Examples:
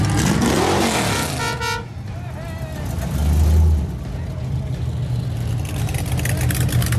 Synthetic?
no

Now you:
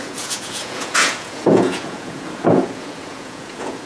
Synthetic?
yes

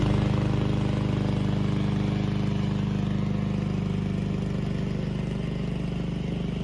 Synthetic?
no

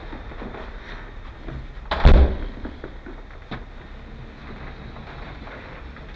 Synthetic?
no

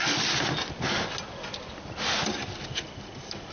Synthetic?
no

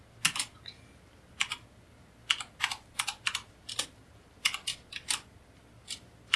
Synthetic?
no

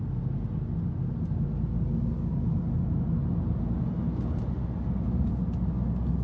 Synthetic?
no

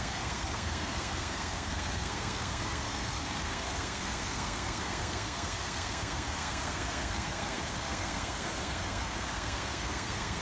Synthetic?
yes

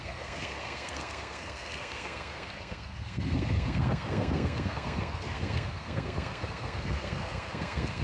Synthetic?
yes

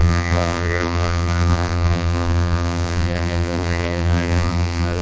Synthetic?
yes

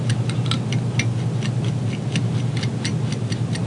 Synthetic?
no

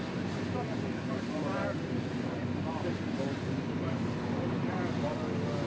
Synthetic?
no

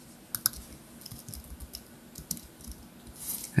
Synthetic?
no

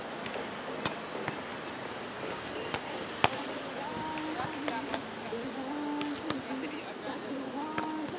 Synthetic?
no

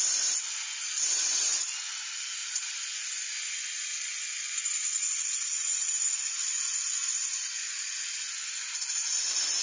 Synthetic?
no